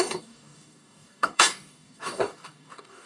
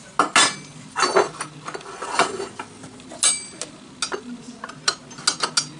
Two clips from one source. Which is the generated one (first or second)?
first